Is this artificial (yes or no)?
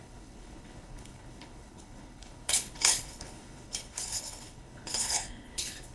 yes